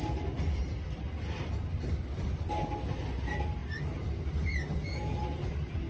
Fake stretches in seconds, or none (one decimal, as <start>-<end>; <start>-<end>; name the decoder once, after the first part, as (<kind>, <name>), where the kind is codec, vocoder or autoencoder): none